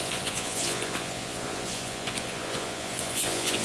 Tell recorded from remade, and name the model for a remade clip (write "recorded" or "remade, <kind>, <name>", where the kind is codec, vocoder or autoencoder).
remade, vocoder, Vocos